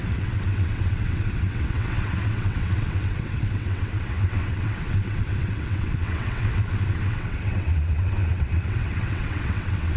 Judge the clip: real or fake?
fake